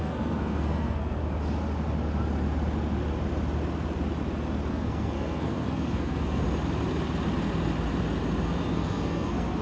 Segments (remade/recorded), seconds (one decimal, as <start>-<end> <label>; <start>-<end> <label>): 0.0-1.2 remade; 1.2-4.7 recorded; 4.7-6.4 remade; 6.4-8.7 recorded; 8.7-9.6 remade